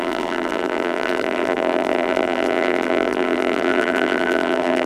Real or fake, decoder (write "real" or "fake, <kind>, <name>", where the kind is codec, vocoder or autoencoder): fake, vocoder, BigVGAN v2